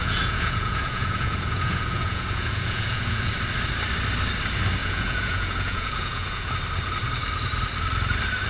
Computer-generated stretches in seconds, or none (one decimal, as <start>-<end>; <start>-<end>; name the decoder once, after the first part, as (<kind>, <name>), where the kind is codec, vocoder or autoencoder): 0.0-3.3 (vocoder, Vocos); 4.8-6.5